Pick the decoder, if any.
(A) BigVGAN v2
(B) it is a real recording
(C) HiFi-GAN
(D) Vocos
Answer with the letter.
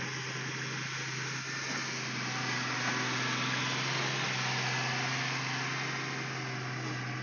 B